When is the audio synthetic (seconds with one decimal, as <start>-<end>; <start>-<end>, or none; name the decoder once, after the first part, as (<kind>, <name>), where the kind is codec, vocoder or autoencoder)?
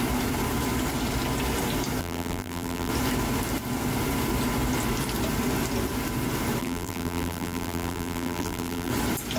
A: 2.0-2.9 (vocoder, BigVGAN v2); 6.6-8.9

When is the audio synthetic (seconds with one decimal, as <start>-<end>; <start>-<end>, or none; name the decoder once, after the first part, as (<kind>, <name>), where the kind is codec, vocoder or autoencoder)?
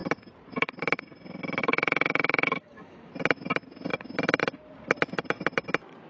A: 1.6-3.1 (autoencoder, DAC-VAE)